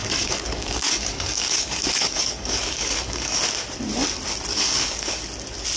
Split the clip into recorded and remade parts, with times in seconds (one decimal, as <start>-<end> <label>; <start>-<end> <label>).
0.0-3.4 remade; 3.4-4.5 recorded; 4.5-5.2 remade; 5.2-5.8 recorded